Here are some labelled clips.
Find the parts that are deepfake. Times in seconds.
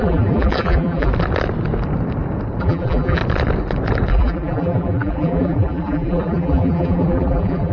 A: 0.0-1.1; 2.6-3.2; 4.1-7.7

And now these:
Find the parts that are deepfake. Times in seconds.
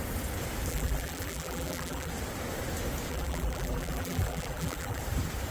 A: 0.7-2.1; 3.1-5.0